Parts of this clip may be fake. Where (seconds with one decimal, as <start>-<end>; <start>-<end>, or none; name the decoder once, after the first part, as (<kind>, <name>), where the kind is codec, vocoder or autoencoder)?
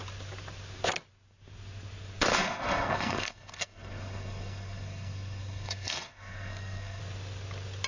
2.3-7.0 (codec, SNAC)